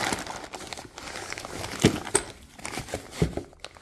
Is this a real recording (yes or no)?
yes